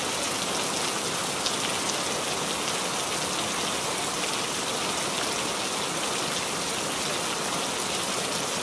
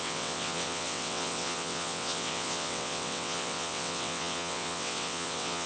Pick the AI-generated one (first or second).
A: second